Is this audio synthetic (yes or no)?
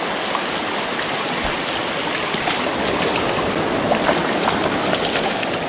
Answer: no